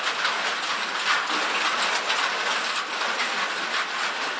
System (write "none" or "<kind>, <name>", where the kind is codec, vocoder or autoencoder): none